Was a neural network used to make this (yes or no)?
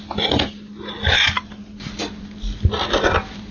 no